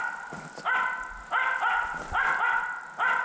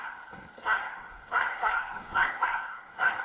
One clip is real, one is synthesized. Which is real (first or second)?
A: first